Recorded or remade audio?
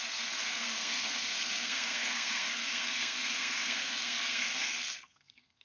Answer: remade